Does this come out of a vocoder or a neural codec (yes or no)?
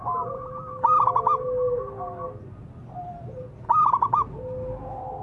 no